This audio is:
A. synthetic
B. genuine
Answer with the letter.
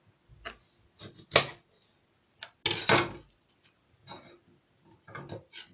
B